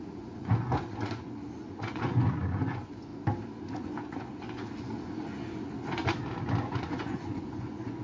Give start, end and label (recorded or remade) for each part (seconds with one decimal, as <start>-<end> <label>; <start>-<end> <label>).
0.0-3.1 remade; 3.1-3.7 recorded; 3.7-6.0 remade; 6.0-6.6 recorded; 6.6-8.0 remade